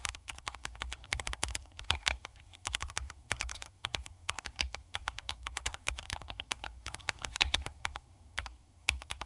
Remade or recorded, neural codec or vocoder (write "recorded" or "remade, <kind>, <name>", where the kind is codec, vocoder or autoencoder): remade, codec, SNAC